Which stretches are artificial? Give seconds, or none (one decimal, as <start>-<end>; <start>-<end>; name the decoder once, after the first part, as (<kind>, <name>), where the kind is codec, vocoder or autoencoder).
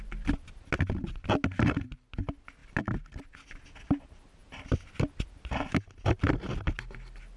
none